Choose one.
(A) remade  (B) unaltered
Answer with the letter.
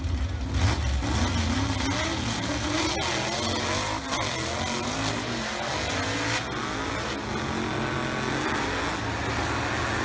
B